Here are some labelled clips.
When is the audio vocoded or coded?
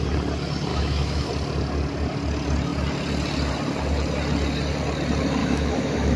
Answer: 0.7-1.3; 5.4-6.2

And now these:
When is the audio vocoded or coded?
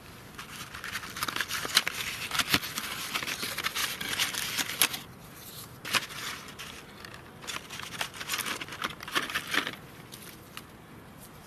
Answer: none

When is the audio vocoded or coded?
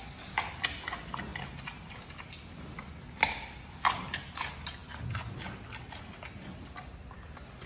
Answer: none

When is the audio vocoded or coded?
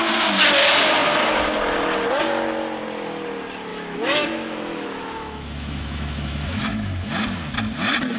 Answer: 3.7-7.1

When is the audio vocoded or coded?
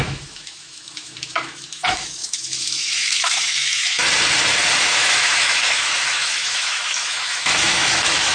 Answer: 0.0-4.0; 4.8-8.3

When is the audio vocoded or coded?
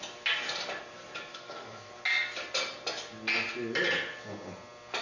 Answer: 1.3-1.9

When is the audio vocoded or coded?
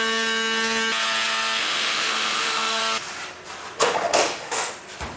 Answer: 1.6-2.8; 3.8-4.7